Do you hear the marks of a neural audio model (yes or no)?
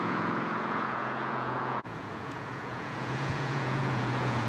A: yes